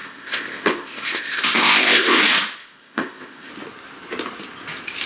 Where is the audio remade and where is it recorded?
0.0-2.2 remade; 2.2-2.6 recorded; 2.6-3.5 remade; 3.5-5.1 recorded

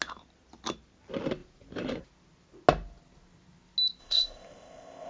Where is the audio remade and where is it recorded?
0.0-4.0 recorded; 4.0-5.1 remade

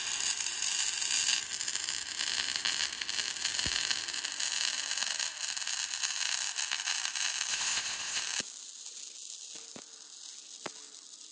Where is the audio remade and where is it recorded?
0.0-7.5 recorded; 7.5-8.2 remade; 8.2-11.3 recorded

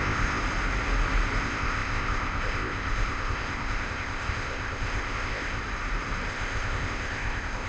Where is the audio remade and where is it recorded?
0.0-0.4 remade; 0.4-1.4 recorded; 1.4-5.6 remade; 5.6-6.3 recorded; 6.3-7.7 remade

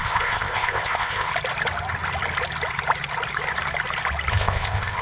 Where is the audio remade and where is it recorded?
0.0-1.3 remade; 1.3-4.3 recorded; 4.3-5.0 remade